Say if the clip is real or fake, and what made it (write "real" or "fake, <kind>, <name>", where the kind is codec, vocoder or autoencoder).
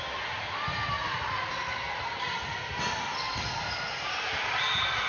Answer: real